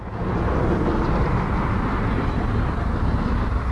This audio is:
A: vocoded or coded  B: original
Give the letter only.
B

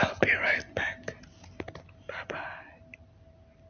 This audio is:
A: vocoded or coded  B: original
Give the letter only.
B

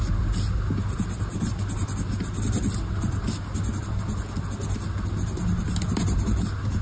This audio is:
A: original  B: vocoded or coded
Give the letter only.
A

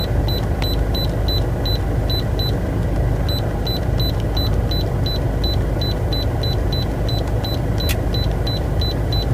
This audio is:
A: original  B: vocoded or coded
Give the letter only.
A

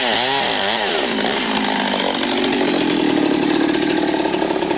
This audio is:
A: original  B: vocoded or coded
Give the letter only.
A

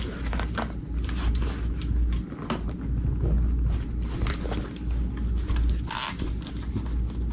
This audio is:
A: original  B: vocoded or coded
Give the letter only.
A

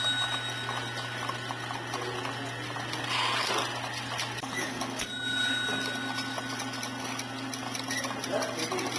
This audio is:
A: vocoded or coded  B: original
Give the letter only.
B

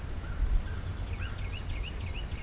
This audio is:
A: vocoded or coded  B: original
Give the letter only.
B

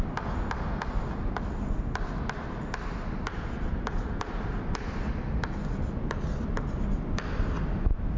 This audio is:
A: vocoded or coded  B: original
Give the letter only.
B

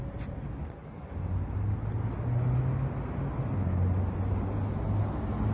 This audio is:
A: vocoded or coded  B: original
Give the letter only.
B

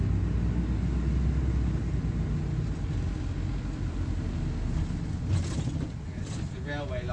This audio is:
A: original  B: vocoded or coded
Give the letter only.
A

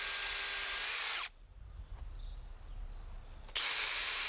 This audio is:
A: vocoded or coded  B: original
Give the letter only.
B